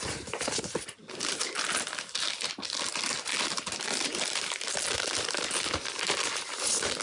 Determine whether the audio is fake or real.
real